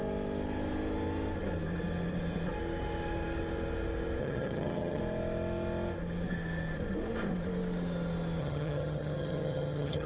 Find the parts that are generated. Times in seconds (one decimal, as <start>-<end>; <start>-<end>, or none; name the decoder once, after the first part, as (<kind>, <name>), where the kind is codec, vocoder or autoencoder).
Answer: 4.2-5.0 (vocoder, HiFi-GAN); 8.4-10.1